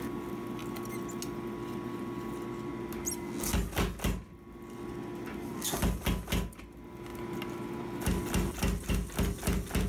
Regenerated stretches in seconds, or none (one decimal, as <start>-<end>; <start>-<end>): none